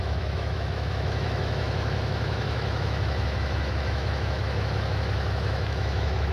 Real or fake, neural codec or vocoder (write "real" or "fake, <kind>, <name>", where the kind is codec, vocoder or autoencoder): fake, autoencoder, DAC-VAE